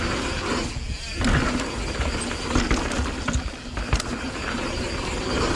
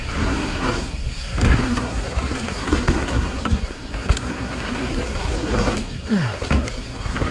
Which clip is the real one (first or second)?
first